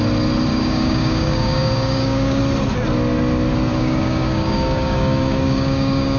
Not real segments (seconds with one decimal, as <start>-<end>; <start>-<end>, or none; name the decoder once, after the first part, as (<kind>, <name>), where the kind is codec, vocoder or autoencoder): 0.5-2.4 (codec, DAC); 3.7-6.2